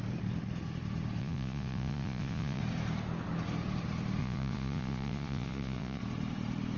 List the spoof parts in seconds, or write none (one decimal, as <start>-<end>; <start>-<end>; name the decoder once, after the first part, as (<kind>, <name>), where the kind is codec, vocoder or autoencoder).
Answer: 1.2-2.6 (vocoder, Vocos); 4.2-6.0